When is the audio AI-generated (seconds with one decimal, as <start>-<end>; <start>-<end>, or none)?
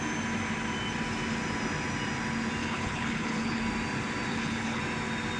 2.6-3.6; 4.3-4.8